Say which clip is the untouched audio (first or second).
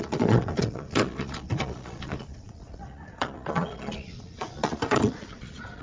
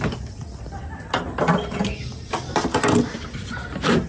second